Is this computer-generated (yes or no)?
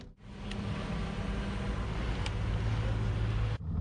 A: no